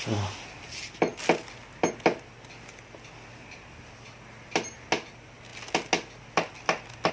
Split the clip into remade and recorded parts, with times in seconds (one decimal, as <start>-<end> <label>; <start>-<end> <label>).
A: 0.0-7.1 recorded